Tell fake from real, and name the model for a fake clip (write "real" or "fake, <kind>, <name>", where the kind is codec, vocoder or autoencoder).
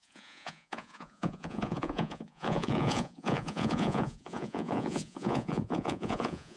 fake, vocoder, Vocos